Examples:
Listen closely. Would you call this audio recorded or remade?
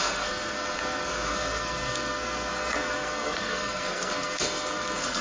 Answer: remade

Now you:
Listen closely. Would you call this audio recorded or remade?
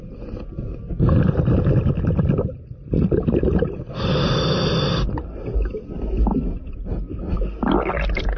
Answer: recorded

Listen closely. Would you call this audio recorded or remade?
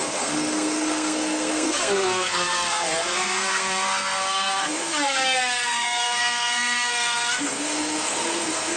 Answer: remade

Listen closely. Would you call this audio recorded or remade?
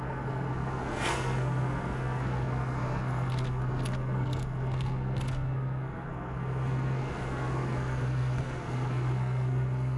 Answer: remade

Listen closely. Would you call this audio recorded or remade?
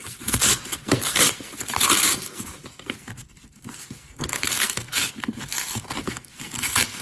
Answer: remade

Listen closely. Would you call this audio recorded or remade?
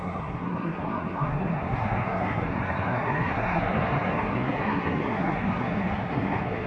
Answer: remade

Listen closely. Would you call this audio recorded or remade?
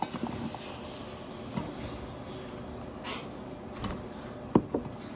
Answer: recorded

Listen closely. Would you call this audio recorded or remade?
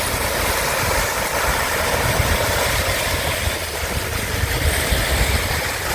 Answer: recorded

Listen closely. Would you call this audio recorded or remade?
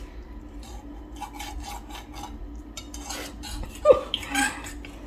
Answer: recorded